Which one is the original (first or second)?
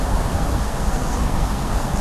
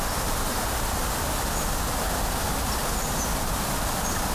second